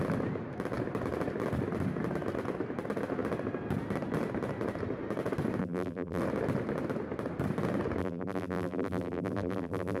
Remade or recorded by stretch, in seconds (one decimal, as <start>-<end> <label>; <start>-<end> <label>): 0.0-5.6 recorded; 5.6-6.2 remade; 6.2-8.0 recorded; 8.0-10.0 remade